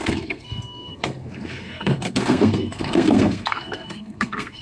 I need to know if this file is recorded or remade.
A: remade